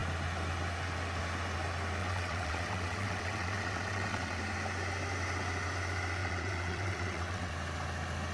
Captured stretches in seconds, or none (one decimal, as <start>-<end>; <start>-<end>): 0.0-2.0; 4.4-6.2; 7.5-8.3